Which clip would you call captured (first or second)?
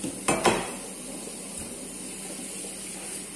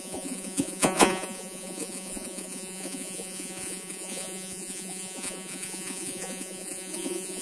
first